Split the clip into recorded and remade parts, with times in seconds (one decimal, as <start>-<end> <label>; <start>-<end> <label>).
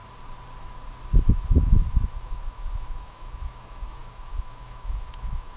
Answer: 0.0-1.3 recorded; 1.3-5.6 remade